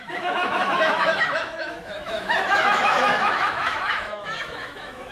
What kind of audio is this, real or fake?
fake